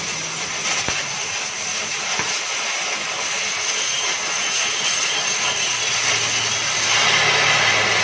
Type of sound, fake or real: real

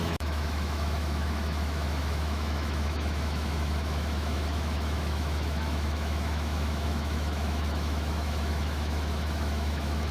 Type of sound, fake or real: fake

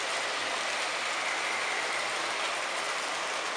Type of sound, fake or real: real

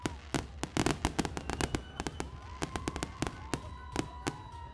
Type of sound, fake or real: real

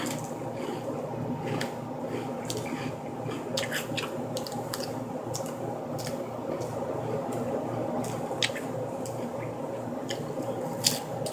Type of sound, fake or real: real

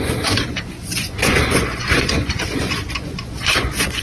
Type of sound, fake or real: fake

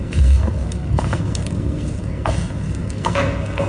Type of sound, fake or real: fake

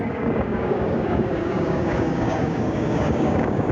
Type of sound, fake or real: fake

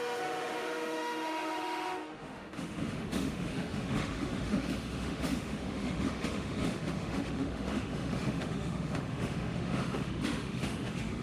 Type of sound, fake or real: fake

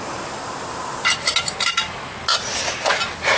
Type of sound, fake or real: real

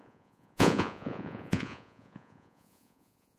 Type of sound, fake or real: fake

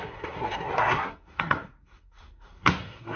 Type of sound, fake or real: fake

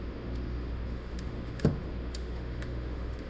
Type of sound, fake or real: fake